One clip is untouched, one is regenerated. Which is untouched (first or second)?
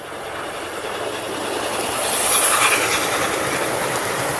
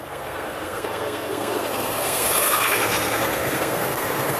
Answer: first